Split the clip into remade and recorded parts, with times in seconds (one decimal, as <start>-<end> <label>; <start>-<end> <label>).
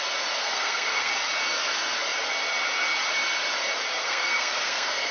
0.0-0.4 recorded; 0.4-1.1 remade; 1.1-4.0 recorded; 4.0-5.1 remade